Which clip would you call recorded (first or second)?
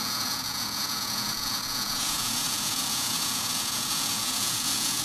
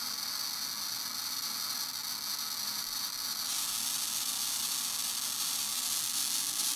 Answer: second